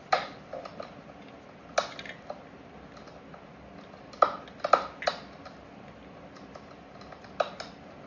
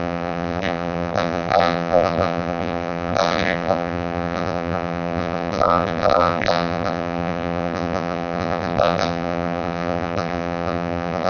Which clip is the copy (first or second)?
second